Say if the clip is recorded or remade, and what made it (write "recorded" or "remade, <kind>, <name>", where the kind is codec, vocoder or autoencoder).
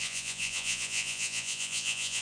remade, vocoder, Vocos